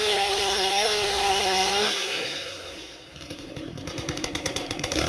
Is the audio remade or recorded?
remade